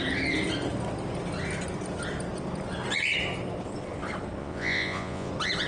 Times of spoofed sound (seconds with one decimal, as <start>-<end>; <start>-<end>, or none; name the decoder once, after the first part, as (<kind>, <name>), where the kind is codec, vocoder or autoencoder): 4.4-5.3 (vocoder, Vocos)